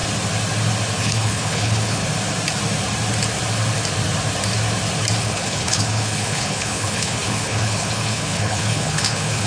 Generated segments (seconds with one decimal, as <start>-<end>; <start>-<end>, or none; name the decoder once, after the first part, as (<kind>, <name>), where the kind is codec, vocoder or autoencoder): 1.0-2.0 (codec, HILCodec); 5.2-9.5